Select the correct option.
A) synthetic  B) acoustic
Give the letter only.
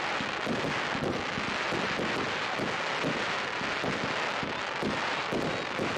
B